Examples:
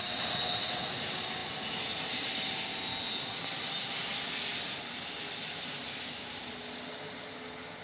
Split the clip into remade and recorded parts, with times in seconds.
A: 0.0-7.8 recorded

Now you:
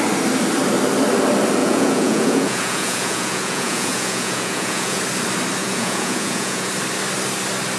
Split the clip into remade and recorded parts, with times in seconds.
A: 0.0-1.6 recorded; 1.6-5.0 remade; 5.0-5.6 recorded; 5.6-6.7 remade; 6.7-7.8 recorded

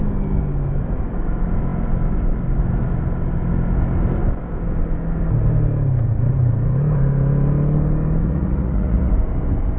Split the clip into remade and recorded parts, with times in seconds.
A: 0.0-8.2 recorded; 8.2-9.1 remade; 9.1-9.8 recorded

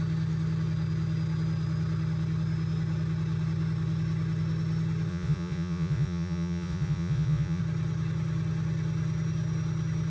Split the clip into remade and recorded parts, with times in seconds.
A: 0.0-5.1 recorded; 5.1-7.6 remade; 7.6-10.1 recorded

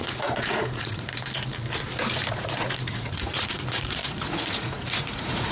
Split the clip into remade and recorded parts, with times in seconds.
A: 0.0-1.1 remade; 1.1-2.3 recorded; 2.3-5.5 remade

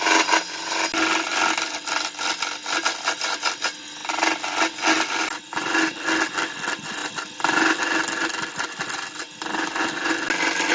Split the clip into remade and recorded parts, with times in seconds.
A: 0.0-10.7 recorded

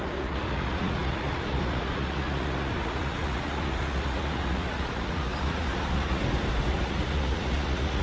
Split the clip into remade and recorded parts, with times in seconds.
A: 0.0-6.2 remade; 6.2-6.7 recorded; 6.7-8.0 remade